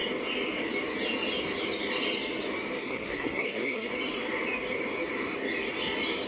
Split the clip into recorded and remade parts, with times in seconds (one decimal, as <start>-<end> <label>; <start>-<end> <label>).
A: 0.0-2.8 recorded; 2.8-3.9 remade; 3.9-6.3 recorded